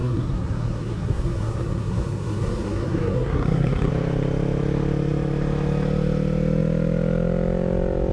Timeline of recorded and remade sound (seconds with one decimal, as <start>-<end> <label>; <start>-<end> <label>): 0.0-3.9 remade; 3.9-8.1 recorded